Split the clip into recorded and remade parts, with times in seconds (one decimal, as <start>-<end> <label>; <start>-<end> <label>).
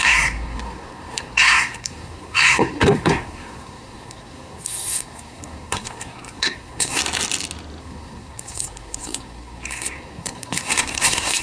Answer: 0.0-7.0 remade; 7.0-7.8 recorded; 7.8-11.4 remade